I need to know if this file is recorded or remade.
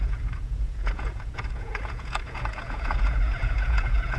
remade